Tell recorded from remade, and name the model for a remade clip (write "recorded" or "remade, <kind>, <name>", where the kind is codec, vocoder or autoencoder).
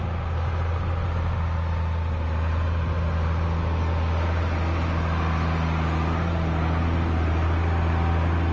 recorded